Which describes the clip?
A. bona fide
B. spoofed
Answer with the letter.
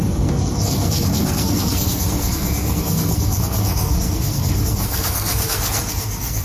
B